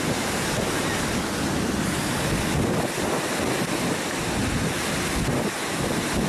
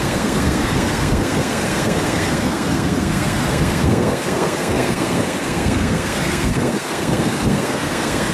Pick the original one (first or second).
first